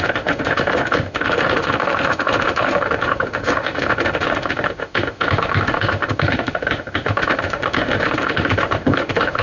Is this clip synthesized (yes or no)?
yes